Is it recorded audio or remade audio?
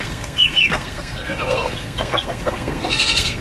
remade